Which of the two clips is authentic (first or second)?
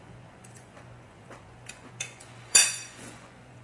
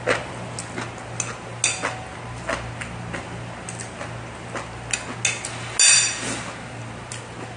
second